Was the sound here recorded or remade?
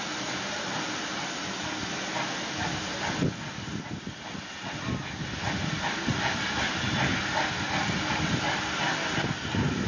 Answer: recorded